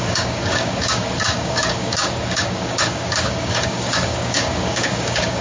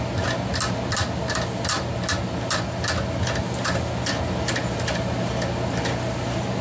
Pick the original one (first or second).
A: second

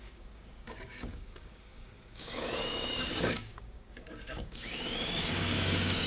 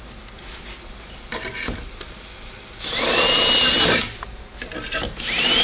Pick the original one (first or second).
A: second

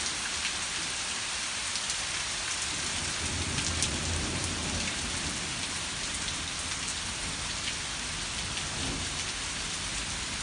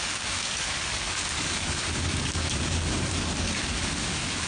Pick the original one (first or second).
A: first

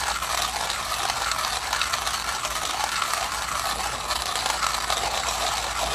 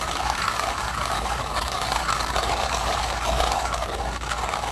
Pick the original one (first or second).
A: first